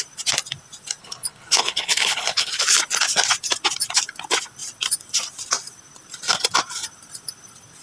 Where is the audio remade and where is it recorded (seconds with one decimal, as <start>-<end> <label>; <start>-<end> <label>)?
0.0-1.0 recorded; 1.0-2.5 remade; 2.5-7.8 recorded